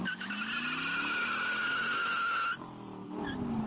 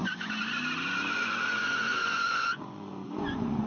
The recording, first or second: first